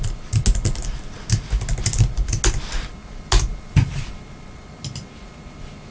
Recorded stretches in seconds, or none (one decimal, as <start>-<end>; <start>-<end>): 0.0-5.9